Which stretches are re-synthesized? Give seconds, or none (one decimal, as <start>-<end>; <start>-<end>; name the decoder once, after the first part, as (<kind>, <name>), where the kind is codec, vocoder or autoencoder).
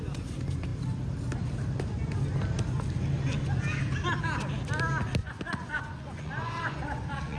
5.2-7.4 (vocoder, Vocos)